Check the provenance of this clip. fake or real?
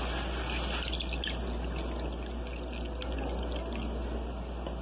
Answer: real